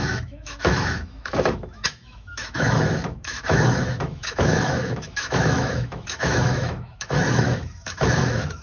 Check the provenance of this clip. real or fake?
fake